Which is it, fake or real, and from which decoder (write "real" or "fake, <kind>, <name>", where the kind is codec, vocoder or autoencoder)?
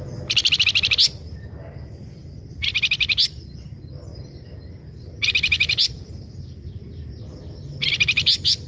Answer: real